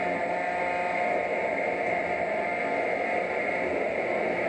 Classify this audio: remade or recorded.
recorded